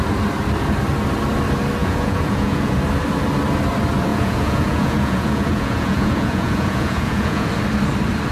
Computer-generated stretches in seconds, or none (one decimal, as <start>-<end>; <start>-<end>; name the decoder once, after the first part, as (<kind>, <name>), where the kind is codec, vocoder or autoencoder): 1.8-2.8 (vocoder, Vocos); 4.1-7.5